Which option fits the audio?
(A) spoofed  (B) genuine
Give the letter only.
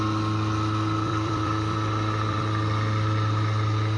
A